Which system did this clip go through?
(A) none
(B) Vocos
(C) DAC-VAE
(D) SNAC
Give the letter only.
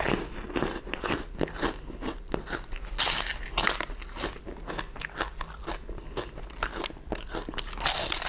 A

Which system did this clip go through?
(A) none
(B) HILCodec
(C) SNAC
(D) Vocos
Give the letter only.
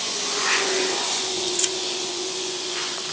D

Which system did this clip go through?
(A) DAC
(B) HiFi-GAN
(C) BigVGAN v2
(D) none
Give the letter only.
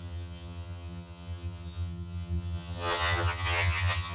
B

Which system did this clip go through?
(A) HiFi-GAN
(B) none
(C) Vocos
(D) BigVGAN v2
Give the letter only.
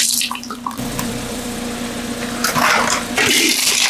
D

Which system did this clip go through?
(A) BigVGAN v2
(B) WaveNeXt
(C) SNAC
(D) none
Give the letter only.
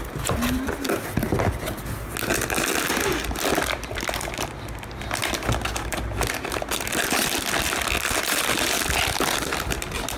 D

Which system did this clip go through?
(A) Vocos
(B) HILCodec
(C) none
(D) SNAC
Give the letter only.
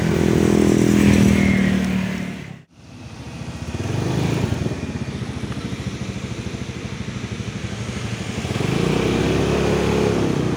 C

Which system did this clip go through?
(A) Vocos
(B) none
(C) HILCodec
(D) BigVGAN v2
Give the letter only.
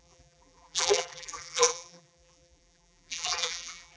D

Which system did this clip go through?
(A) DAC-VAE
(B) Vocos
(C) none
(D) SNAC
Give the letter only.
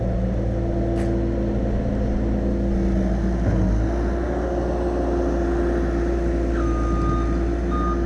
C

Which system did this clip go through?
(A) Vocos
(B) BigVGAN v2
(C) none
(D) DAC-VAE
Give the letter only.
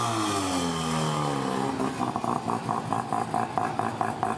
C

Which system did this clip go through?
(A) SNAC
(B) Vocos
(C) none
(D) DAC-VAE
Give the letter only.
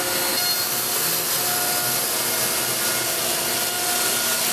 C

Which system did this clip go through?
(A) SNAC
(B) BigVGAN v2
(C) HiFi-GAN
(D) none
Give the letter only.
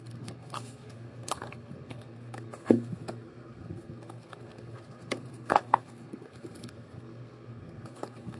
A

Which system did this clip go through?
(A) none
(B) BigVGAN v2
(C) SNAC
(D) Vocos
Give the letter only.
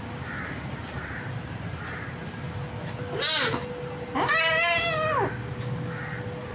A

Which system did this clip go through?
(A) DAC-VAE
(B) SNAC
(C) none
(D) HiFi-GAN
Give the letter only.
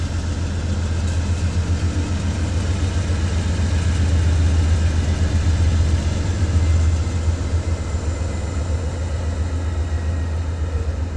C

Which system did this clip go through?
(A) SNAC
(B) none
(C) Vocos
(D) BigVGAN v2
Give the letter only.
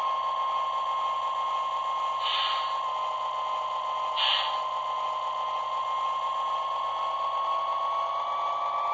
B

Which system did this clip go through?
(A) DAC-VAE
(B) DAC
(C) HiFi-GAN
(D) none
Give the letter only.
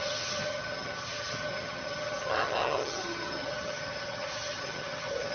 C